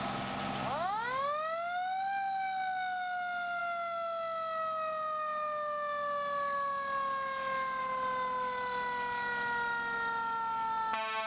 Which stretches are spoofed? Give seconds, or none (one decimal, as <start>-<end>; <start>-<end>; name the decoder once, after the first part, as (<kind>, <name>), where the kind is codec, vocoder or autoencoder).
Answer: none